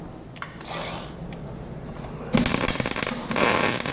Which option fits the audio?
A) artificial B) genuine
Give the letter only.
B